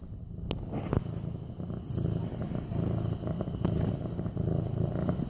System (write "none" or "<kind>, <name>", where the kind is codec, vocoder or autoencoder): none